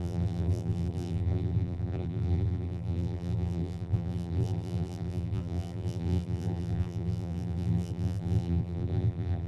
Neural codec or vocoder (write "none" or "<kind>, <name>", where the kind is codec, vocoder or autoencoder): vocoder, BigVGAN v2